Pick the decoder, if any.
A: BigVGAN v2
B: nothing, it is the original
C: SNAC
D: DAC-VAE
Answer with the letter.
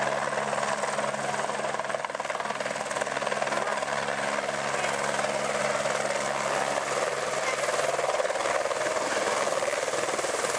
B